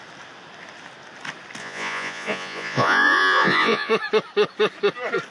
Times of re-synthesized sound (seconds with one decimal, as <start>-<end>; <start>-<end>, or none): 1.6-3.9